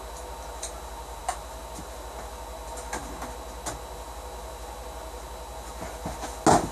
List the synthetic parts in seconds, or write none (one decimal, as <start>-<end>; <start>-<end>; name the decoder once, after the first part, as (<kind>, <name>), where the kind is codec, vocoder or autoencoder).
none